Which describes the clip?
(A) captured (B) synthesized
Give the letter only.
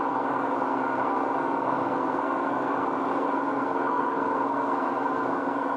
B